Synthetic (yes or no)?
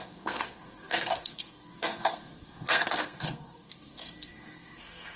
yes